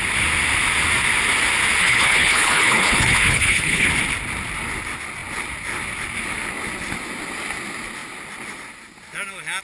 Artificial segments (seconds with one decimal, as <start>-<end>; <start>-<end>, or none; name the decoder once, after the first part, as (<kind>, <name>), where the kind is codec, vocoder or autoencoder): 1.8-3.9 (codec, HILCodec)

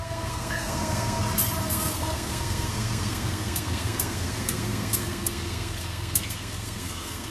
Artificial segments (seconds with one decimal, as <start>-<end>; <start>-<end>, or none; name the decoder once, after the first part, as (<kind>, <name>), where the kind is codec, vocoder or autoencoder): 0.0-1.2 (codec, SNAC); 1.7-7.3

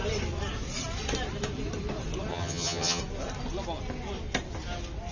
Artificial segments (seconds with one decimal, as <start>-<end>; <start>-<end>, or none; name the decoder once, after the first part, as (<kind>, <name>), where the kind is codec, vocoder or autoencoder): 2.3-3.0 (vocoder, HiFi-GAN)

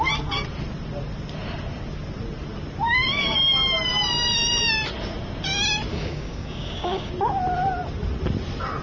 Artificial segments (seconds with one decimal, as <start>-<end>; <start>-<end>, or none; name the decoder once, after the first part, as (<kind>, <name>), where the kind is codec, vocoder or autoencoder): 5.9-7.1 (codec, DAC)

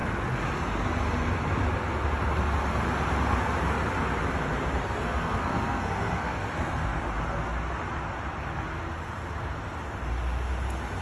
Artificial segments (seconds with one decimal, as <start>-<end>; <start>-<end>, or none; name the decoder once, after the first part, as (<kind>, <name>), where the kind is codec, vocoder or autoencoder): 4.8-7.0 (codec, SNAC)

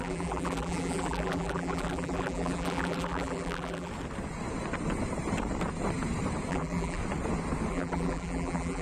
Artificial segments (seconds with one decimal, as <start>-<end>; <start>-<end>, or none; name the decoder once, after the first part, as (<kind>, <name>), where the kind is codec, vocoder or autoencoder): 0.0-3.9 (vocoder, BigVGAN v2); 6.5-7.0; 7.7-8.8